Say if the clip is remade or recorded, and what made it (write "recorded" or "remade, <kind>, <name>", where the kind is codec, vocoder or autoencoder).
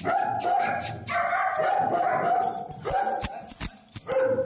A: recorded